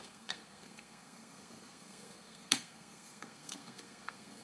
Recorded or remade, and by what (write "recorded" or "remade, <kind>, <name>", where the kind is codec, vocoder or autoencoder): remade, codec, SNAC